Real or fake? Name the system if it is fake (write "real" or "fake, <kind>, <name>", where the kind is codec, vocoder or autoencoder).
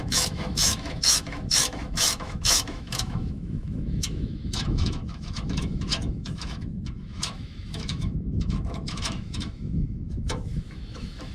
fake, autoencoder, DAC-VAE